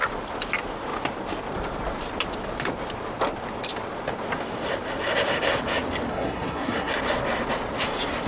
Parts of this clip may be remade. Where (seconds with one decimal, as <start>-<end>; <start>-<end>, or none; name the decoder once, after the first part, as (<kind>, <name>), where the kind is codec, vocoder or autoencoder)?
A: 6.1-6.9 (codec, SNAC)